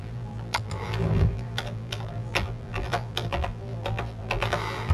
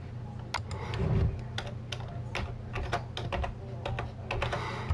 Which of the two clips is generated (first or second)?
first